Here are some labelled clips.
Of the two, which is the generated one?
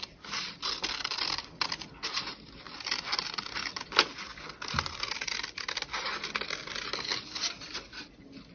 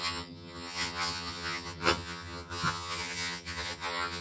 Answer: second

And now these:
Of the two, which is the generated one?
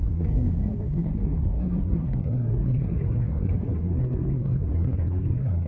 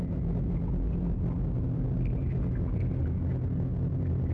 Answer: first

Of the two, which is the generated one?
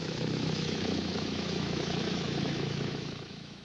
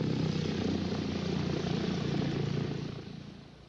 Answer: first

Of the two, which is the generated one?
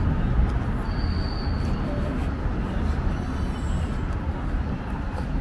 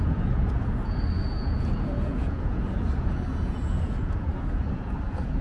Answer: second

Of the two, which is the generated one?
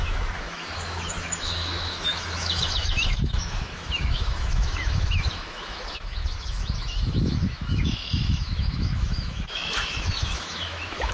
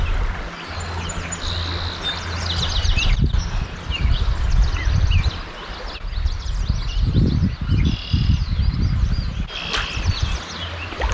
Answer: first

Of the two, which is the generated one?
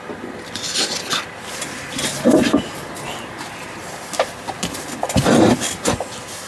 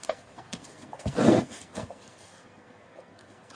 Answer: second